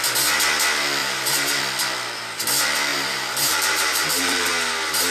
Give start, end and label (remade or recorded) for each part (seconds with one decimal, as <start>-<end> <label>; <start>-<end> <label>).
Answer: 0.0-1.0 recorded; 1.0-1.6 remade; 1.6-2.9 recorded; 2.9-4.5 remade; 4.5-5.1 recorded